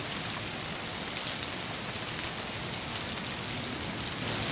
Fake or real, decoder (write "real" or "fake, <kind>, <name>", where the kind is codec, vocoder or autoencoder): real